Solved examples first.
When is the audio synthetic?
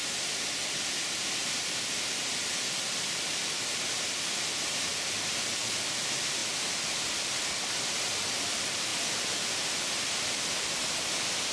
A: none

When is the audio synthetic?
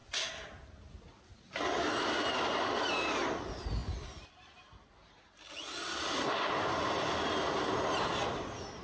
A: none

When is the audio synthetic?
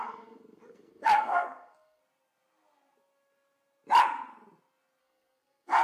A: 0.0-2.0 (codec, SNAC); 5.0-5.8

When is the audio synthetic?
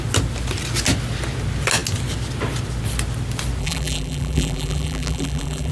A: 3.6-5.7 (vocoder, BigVGAN v2)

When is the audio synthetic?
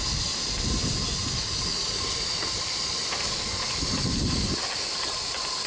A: none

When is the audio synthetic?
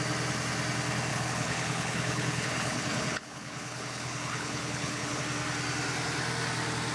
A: 1.1-5.2 (codec, HILCodec)